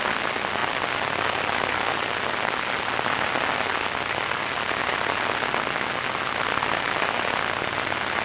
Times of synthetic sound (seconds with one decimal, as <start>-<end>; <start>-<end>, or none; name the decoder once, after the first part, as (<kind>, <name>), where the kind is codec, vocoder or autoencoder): none